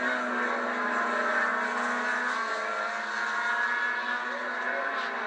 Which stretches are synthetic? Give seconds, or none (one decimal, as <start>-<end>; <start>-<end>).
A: none